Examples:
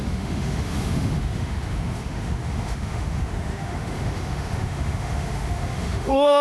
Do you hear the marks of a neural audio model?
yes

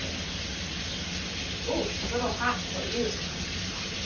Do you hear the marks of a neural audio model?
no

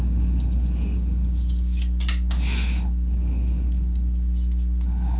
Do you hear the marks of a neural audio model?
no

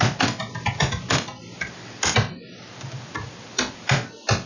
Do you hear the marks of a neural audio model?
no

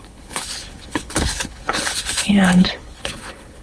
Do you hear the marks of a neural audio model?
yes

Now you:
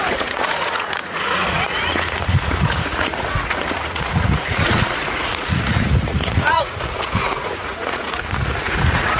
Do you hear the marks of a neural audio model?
yes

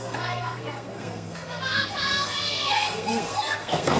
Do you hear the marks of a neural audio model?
yes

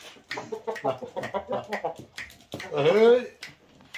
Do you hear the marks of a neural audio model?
no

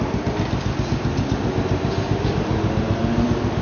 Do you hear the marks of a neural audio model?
no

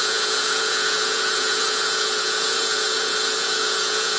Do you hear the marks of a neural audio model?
yes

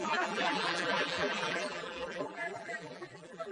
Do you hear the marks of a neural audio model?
yes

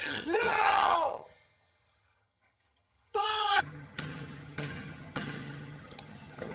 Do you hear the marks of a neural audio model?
yes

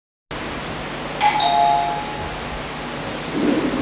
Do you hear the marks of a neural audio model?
no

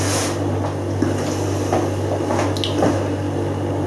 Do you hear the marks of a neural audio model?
no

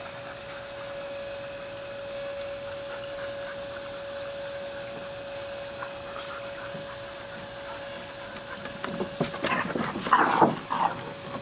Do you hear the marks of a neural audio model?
no